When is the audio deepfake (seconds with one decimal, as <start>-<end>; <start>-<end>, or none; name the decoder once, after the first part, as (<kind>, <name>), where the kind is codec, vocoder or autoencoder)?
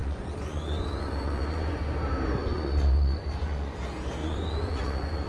0.0-1.8 (vocoder, Vocos); 2.4-3.8; 4.2-5.3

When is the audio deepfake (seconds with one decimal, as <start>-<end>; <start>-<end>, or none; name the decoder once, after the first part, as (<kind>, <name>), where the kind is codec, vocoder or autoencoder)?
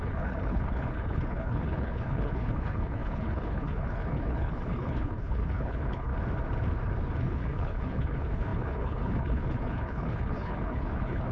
0.0-6.1 (codec, HILCodec); 7.2-11.3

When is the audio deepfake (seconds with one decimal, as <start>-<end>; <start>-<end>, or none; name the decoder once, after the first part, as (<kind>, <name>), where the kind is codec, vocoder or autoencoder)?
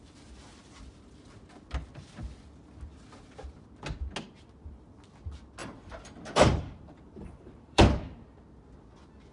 5.6-7.8 (vocoder, BigVGAN v2)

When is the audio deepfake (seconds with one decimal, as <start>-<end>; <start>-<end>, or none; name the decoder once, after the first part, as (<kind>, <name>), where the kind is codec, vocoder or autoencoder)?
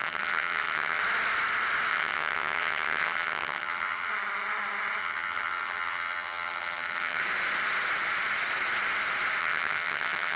0.0-1.0 (vocoder, HiFi-GAN); 1.9-4.1; 5.0-7.2; 9.4-10.4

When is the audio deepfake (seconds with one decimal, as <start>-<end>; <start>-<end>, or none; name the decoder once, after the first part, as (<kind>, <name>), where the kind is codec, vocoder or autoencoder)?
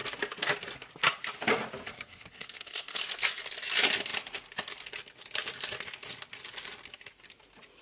1.9-3.0 (codec, SNAC)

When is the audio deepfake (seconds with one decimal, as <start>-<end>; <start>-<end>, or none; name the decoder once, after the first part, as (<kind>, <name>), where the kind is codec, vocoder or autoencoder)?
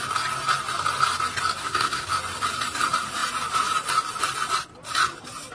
1.6-2.1 (codec, SNAC)